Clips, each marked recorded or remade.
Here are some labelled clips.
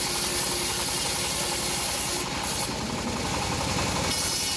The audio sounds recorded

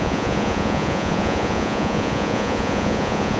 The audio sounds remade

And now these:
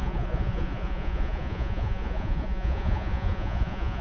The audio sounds remade